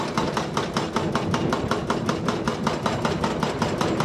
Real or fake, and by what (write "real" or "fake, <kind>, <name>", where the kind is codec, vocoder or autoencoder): real